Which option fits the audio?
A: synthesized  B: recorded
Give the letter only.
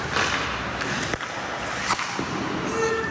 B